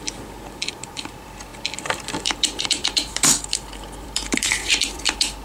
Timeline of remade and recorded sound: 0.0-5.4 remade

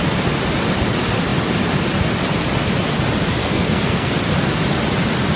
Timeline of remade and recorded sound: 0.0-3.4 recorded; 3.4-4.1 remade; 4.1-5.4 recorded

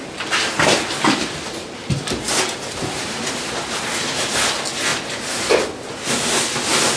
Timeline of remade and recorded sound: 0.0-7.0 recorded

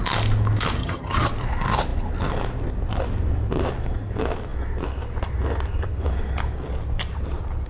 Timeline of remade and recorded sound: 0.0-0.8 recorded; 0.8-1.3 remade; 1.3-7.7 recorded